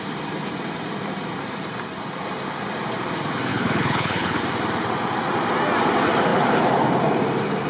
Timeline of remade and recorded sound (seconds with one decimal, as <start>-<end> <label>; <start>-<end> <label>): 0.0-3.5 recorded; 3.5-4.4 remade; 4.4-7.7 recorded